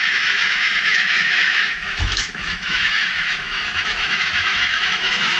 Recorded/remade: remade